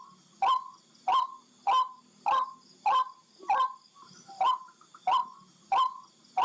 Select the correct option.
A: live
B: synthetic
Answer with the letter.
A